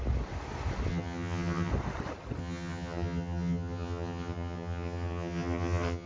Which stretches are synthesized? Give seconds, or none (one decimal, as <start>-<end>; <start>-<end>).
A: 0.9-1.7; 2.4-6.1

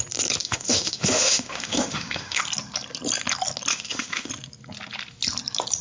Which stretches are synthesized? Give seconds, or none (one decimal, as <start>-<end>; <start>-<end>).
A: 0.4-2.4; 3.7-4.3

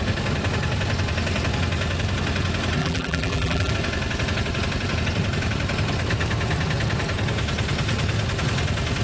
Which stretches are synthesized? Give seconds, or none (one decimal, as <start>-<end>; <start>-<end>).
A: 2.8-3.7

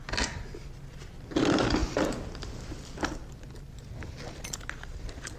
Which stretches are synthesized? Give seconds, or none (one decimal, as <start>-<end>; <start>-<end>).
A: none

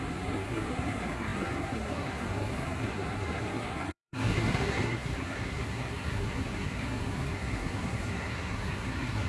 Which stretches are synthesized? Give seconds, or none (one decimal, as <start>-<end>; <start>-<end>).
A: 0.0-9.3

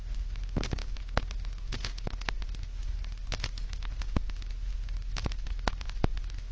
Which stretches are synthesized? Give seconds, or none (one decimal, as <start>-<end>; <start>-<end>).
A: none

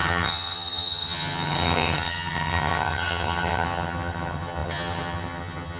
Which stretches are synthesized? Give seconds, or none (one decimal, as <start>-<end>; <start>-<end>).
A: 0.0-5.8